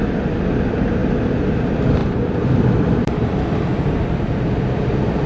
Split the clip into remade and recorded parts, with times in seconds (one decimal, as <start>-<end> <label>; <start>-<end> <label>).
0.0-1.0 remade; 1.0-1.6 recorded; 1.6-5.3 remade